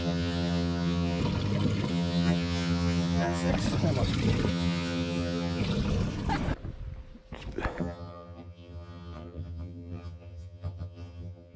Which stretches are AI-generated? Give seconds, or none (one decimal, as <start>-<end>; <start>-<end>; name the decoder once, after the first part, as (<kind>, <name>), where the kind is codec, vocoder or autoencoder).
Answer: 0.0-1.2 (vocoder, HiFi-GAN); 1.9-3.5; 4.5-5.6; 7.8-11.6